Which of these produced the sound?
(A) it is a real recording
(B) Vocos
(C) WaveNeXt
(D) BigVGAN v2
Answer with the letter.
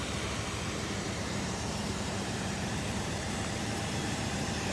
D